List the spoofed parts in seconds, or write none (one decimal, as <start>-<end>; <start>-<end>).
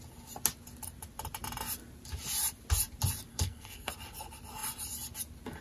3.3-3.9